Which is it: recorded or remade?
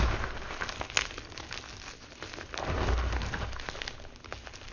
recorded